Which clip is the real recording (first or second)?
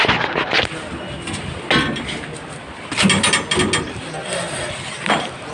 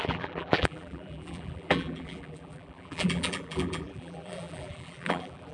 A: first